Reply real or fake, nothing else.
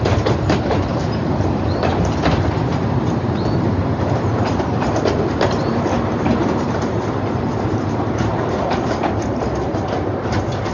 fake